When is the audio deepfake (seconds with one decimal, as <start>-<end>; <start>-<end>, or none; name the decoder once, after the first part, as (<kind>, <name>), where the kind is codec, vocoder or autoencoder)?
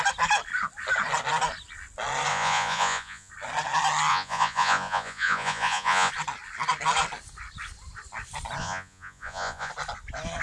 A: 2.3-3.3 (vocoder, Vocos); 4.1-6.1; 8.6-9.7